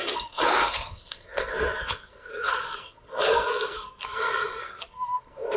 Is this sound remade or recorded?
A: remade